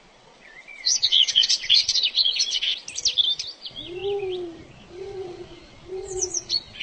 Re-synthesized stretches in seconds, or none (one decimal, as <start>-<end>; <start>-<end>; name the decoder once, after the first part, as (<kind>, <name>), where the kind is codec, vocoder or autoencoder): 0.0-2.8 (vocoder, Vocos); 3.6-6.8